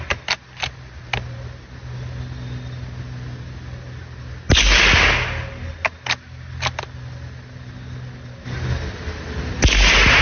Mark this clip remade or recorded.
recorded